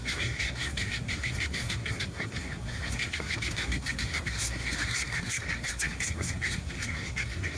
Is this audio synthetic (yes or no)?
yes